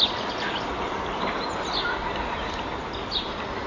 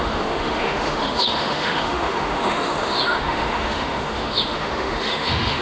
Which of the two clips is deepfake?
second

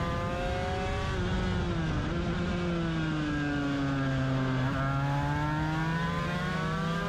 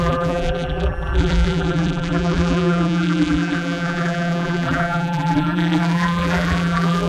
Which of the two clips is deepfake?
second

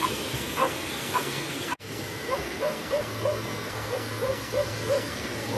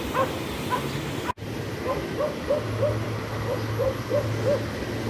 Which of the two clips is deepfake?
first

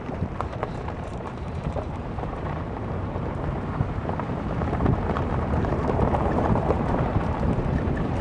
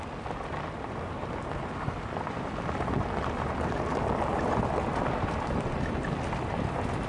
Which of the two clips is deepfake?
first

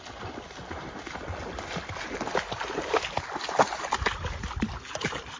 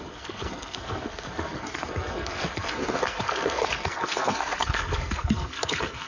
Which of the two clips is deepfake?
second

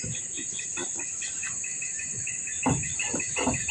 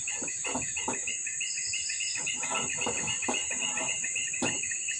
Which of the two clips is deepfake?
first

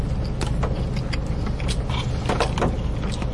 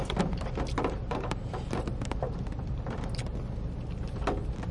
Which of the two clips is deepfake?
second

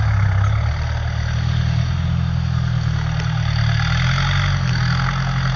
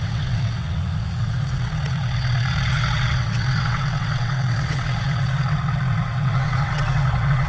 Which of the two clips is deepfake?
second